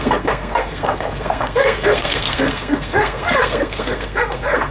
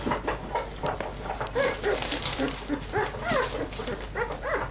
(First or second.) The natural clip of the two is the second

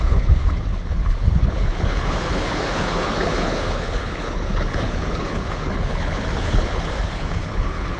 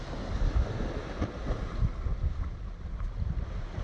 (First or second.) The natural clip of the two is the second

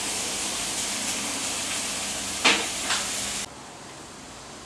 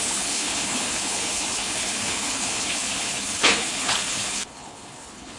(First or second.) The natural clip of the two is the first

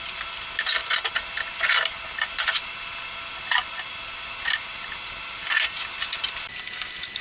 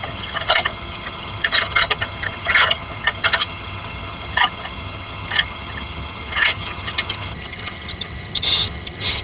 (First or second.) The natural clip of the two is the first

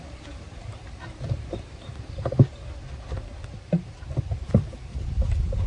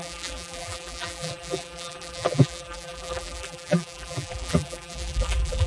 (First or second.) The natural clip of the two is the first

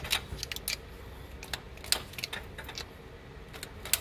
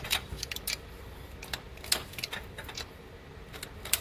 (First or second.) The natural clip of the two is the first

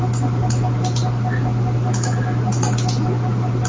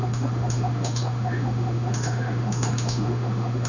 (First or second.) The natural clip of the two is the first